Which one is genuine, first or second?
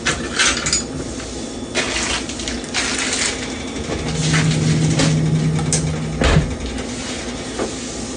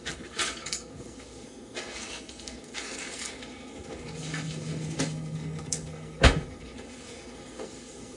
first